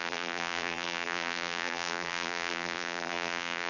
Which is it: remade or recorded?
remade